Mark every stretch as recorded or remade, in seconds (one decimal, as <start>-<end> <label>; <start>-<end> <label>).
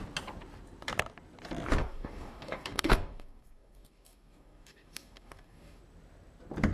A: 0.0-1.8 recorded; 1.8-5.8 remade; 5.8-6.7 recorded